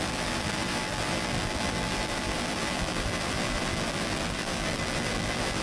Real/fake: fake